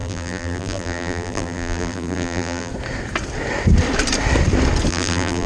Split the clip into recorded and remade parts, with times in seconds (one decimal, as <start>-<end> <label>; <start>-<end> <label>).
0.0-2.7 remade; 2.7-4.9 recorded; 4.9-5.5 remade